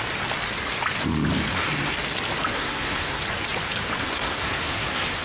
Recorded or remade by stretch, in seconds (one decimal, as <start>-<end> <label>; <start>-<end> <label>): 0.0-2.5 recorded; 2.5-3.2 remade; 3.2-4.0 recorded; 4.0-5.2 remade